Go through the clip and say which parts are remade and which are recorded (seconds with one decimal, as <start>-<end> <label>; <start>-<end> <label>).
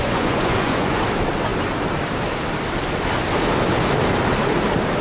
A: 0.0-1.0 remade; 1.0-5.0 recorded